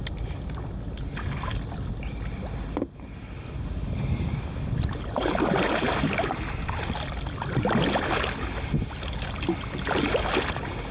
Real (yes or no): yes